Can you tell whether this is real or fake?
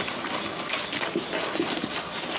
real